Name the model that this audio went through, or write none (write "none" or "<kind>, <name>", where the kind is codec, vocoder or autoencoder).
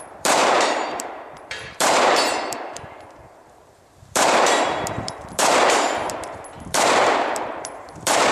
vocoder, BigVGAN v2